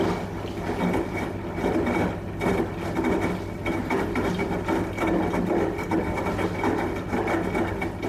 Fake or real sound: real